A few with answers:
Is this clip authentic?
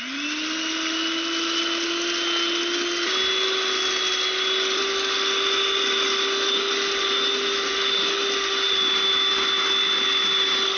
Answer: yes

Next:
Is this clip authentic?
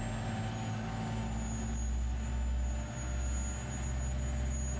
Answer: yes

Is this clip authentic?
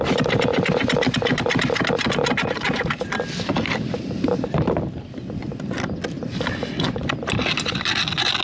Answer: yes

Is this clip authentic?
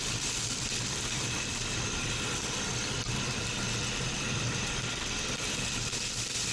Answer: yes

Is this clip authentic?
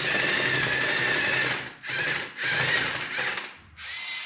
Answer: yes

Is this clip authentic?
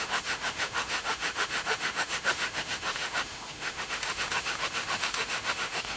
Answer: no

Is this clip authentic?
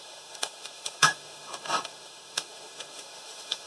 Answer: no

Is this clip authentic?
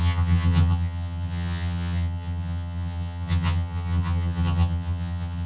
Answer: no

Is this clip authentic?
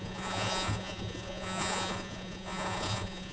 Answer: no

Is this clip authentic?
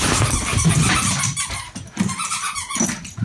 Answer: yes